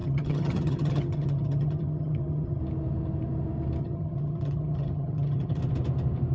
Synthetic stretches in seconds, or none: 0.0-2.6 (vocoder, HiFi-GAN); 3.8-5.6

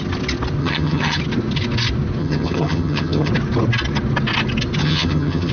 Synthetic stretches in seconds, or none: 0.6-1.2 (vocoder, HiFi-GAN); 2.2-3.3; 4.8-5.5

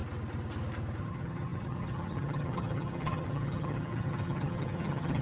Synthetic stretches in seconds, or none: 1.0-5.2 (vocoder, HiFi-GAN)

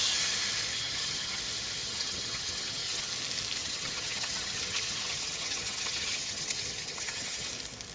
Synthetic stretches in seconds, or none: 0.7-1.4 (vocoder, HiFi-GAN); 1.8-3.1; 3.6-7.5

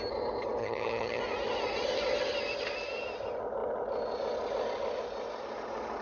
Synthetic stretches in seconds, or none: 0.6-1.2 (vocoder, HiFi-GAN)

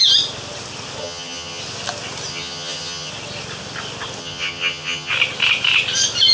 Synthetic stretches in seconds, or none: 1.0-1.6 (vocoder, HiFi-GAN); 2.3-3.1; 4.2-5.1